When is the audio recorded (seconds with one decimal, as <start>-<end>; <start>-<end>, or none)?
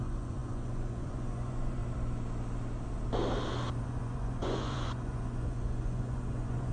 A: 1.8-3.8